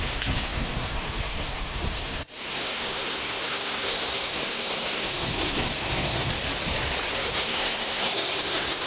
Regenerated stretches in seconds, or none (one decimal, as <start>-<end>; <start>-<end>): 0.0-6.3; 7.1-8.9